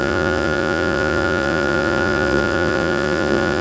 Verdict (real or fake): fake